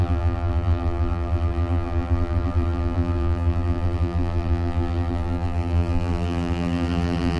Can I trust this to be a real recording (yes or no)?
no